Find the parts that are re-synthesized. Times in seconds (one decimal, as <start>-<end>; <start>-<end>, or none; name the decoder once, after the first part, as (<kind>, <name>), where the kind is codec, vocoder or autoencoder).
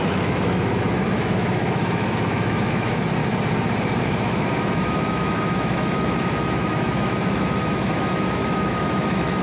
0.0-3.2 (autoencoder, DAC-VAE); 4.0-9.4